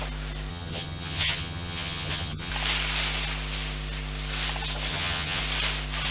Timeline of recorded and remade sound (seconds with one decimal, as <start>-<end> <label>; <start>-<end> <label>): 0.0-0.5 recorded; 0.5-2.5 remade; 2.5-4.9 recorded; 4.9-5.4 remade; 5.4-6.1 recorded